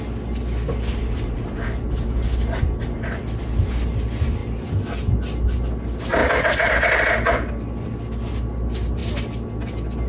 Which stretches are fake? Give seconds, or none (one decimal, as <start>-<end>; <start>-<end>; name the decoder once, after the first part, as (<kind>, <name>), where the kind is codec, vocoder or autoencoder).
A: none

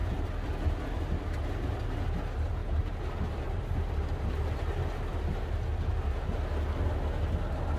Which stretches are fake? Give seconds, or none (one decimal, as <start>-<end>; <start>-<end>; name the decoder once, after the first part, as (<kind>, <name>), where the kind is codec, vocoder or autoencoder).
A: 0.0-1.1 (vocoder, BigVGAN v2); 2.6-6.0

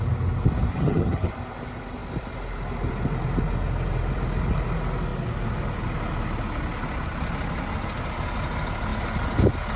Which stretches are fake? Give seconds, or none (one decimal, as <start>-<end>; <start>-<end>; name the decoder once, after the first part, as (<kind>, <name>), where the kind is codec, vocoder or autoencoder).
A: 0.7-1.3 (vocoder, HiFi-GAN)

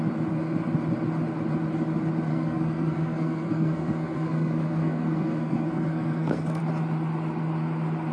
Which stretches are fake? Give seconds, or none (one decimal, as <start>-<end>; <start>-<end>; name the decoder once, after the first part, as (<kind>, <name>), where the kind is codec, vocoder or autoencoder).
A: 2.3-6.6 (codec, SNAC)